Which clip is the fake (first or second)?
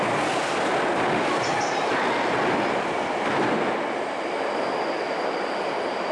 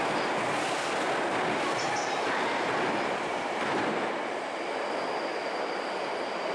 second